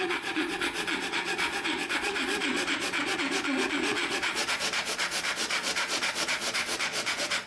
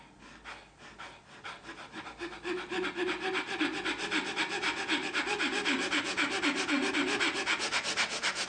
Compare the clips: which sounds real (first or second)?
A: second